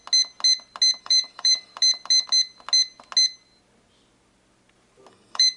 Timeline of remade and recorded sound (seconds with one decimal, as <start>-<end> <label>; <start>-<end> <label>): 0.0-1.0 recorded; 1.0-1.7 remade; 1.7-5.1 recorded; 5.1-5.6 remade